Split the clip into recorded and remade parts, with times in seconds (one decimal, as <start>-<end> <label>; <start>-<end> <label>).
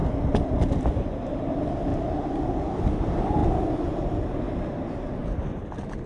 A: 0.0-6.1 recorded